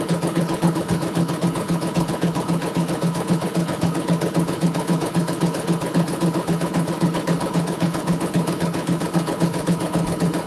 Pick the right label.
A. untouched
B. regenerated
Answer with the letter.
B